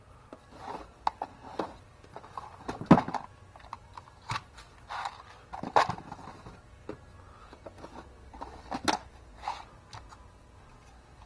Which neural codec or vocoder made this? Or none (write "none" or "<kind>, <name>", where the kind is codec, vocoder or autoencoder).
none